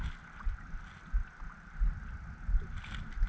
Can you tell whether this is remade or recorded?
recorded